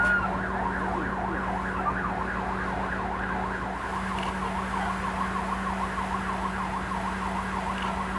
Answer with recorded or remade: recorded